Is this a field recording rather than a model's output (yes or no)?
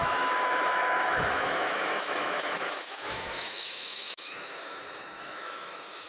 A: no